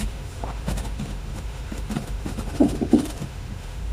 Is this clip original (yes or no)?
no